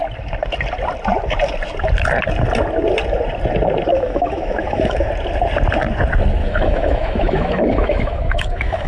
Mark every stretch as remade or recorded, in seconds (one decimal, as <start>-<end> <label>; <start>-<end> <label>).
0.0-3.9 recorded; 3.9-5.1 remade; 5.1-6.4 recorded; 6.4-8.9 remade